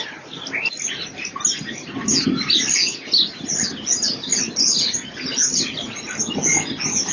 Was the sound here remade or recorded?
recorded